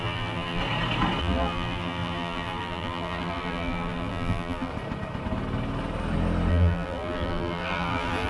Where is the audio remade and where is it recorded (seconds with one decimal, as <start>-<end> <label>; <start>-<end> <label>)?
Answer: 0.0-0.6 remade; 0.6-1.2 recorded; 1.2-4.7 remade; 4.7-6.5 recorded; 6.5-8.3 remade